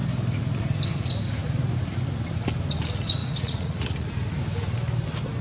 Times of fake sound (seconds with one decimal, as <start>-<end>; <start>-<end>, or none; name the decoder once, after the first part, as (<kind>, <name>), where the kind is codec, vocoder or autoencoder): 3.2-4.1 (vocoder, Vocos)